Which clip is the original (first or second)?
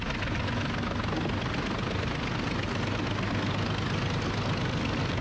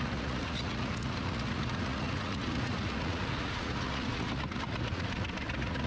first